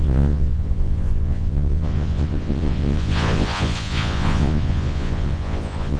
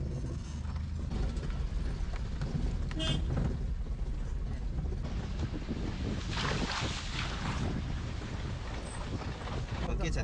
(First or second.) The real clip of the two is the second